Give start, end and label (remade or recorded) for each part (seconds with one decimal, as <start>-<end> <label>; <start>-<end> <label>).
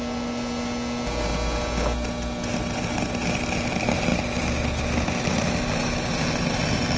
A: 0.0-7.0 recorded